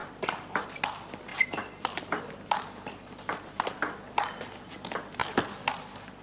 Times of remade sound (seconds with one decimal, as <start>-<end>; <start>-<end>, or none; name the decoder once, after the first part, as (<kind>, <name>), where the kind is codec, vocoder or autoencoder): 1.3-4.7 (vocoder, BigVGAN v2)